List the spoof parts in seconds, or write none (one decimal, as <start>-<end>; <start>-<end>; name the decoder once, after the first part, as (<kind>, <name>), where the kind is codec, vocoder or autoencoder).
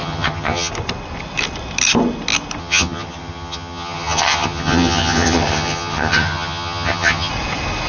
0.0-0.7 (vocoder, HiFi-GAN); 2.6-7.3